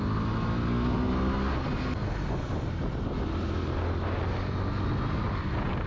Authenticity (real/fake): real